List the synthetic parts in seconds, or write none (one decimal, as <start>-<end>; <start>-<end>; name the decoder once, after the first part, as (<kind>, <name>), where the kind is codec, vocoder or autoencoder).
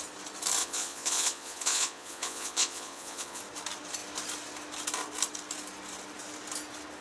0.6-3.4 (vocoder, Vocos)